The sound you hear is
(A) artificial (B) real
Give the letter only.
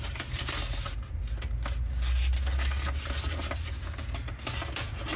B